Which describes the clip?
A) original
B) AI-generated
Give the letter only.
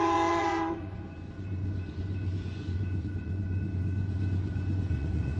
B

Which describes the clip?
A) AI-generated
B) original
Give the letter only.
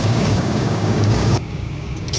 A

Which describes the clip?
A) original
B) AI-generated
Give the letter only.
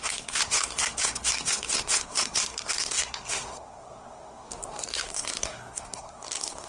B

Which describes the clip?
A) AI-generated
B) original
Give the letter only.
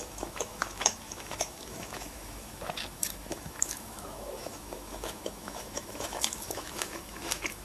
A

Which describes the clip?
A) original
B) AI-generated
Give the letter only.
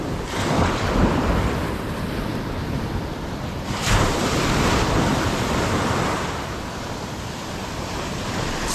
B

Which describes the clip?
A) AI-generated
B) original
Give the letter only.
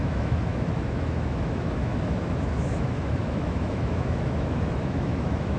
A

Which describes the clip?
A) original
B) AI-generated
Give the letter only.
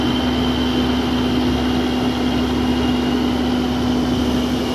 A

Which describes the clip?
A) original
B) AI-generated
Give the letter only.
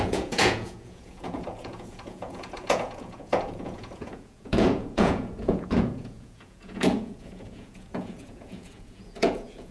B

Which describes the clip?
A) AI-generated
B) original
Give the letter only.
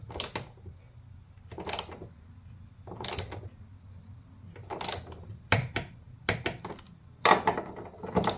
B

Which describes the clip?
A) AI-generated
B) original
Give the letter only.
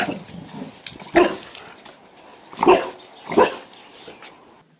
B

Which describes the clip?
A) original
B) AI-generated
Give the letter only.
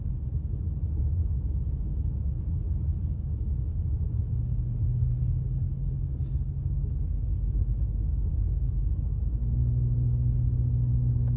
A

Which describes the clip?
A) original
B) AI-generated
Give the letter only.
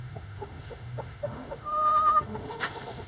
B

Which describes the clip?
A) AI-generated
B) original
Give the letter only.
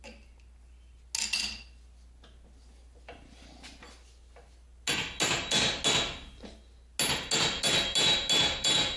B